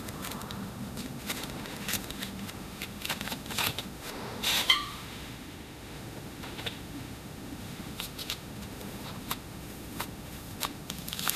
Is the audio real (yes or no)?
no